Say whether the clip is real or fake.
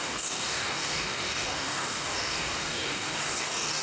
fake